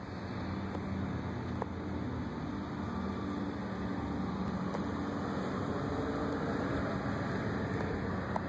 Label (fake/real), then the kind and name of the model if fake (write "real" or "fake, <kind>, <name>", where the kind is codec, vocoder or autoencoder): real